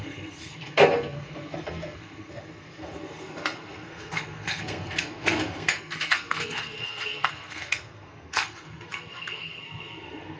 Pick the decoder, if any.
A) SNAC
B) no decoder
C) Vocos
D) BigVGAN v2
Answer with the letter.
A